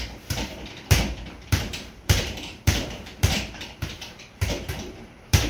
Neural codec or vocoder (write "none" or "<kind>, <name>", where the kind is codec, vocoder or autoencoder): vocoder, BigVGAN v2